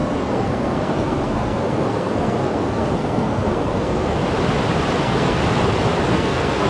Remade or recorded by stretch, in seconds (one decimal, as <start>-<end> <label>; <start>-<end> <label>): 0.0-4.2 remade; 4.2-5.0 recorded; 5.0-5.4 remade; 5.4-6.1 recorded; 6.1-6.7 remade